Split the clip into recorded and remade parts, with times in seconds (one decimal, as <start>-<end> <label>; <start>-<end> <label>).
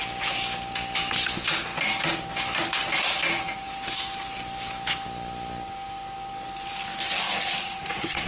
0.0-7.6 recorded; 7.6-8.3 remade